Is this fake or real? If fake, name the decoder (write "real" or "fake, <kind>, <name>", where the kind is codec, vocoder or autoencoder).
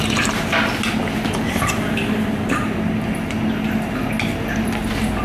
real